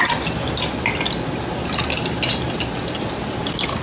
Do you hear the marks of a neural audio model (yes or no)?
no